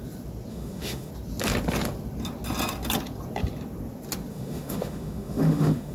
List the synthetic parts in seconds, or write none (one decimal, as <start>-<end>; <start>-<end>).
0.5-1.1; 4.3-5.9